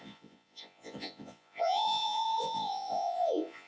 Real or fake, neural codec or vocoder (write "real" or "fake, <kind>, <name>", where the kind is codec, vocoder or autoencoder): fake, vocoder, Vocos